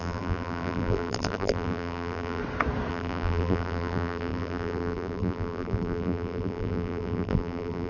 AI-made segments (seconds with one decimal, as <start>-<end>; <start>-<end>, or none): 0.0-2.4; 2.9-7.9